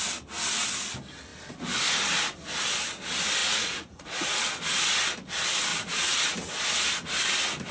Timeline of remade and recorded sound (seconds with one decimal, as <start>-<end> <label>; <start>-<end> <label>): 0.0-3.4 recorded; 3.4-4.5 remade; 4.5-5.7 recorded; 5.7-6.2 remade; 6.2-7.7 recorded